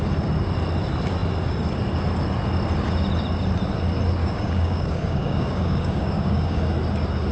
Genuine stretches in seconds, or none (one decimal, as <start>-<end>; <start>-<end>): 0.0-4.2; 6.6-7.3